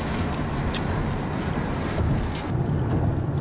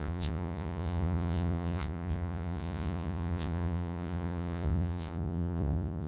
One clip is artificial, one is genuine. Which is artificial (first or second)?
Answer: second